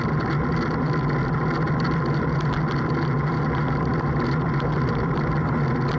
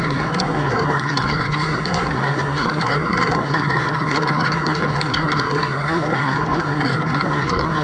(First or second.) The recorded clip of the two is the first